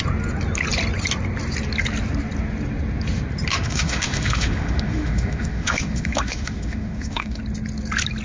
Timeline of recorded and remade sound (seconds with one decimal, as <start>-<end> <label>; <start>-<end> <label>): 0.0-3.5 recorded; 3.5-7.4 remade; 7.4-8.2 recorded